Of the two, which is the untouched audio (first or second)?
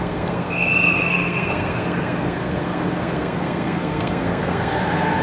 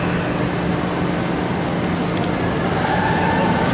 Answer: second